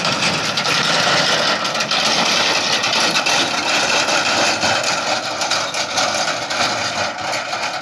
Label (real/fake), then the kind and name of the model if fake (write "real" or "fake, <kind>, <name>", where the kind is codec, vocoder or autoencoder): real